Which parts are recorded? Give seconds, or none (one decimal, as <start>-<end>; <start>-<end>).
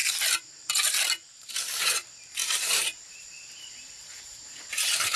0.0-1.5